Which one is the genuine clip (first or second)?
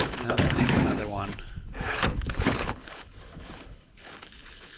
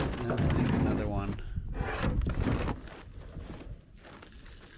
second